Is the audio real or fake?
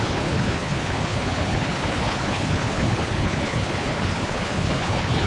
fake